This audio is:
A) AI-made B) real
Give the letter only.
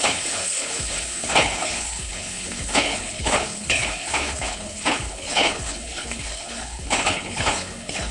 A